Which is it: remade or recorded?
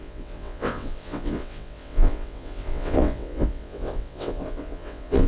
remade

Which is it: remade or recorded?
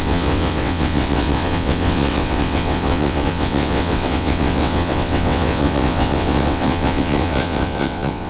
remade